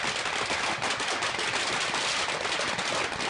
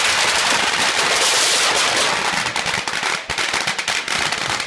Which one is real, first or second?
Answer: first